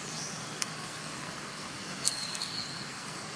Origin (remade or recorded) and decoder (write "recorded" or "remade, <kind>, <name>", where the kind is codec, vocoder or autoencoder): remade, codec, SNAC